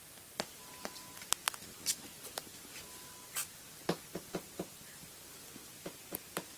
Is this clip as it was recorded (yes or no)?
yes